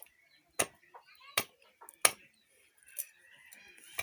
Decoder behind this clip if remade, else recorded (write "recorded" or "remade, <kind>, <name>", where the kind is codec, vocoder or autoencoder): recorded